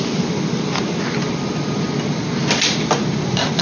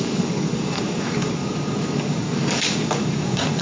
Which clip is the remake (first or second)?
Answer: second